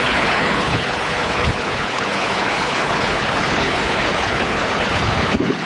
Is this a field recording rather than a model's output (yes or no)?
no